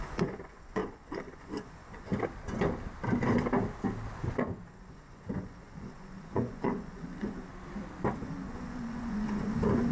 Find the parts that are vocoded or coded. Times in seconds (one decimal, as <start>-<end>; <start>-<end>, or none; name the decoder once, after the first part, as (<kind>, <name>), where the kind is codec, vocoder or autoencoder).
0.0-2.1 (vocoder, Vocos); 4.7-7.5; 8.2-9.9